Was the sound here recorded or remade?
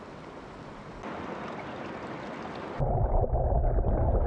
recorded